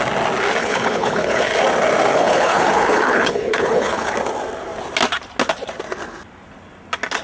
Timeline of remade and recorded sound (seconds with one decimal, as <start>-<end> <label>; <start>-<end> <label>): 0.0-0.6 recorded; 0.6-1.4 remade; 1.4-2.1 recorded; 2.1-4.1 remade; 4.1-7.2 recorded